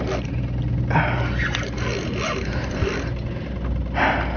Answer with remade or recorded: recorded